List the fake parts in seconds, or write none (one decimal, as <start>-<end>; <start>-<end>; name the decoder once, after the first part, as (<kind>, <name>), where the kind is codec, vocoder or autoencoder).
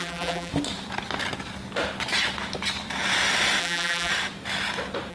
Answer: 0.0-0.5 (vocoder, BigVGAN v2); 3.6-4.1